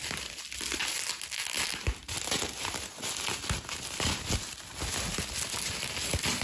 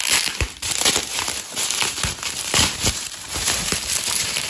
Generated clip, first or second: second